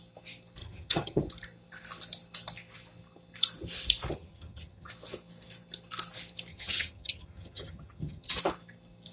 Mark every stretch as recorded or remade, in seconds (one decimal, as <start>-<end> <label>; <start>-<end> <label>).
0.0-0.6 recorded; 0.6-1.2 remade; 1.2-4.1 recorded; 4.1-4.9 remade; 4.9-6.5 recorded; 6.5-8.4 remade; 8.4-9.1 recorded